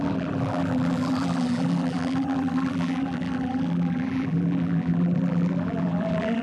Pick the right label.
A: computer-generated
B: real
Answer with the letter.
A